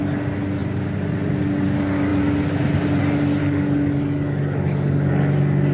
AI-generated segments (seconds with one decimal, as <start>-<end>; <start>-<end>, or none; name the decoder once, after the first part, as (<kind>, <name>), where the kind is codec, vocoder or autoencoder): 3.4-5.1 (codec, DAC)